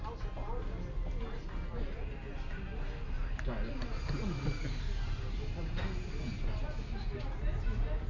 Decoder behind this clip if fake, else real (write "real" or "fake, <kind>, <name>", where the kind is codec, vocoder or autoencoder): real